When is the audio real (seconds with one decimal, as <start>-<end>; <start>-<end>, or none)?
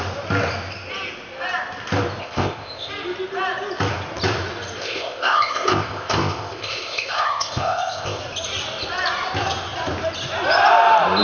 0.0-2.2; 2.9-4.8; 8.2-11.2